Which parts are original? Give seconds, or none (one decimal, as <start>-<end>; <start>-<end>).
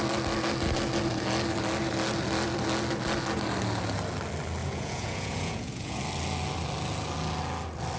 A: 0.0-4.6; 6.0-8.0